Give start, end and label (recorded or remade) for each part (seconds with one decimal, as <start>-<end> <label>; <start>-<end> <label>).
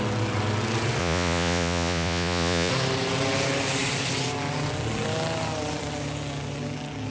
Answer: 0.0-1.0 recorded; 1.0-2.7 remade; 2.7-7.1 recorded